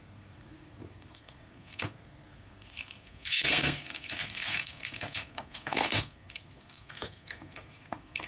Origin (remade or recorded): remade